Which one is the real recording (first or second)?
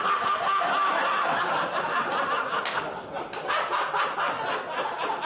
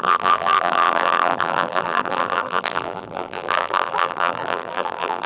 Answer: first